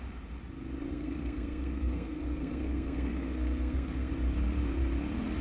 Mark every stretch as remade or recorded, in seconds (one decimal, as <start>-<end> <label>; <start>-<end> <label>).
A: 0.0-0.9 recorded; 0.9-4.1 remade; 4.1-5.4 recorded